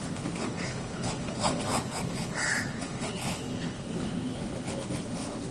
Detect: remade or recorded remade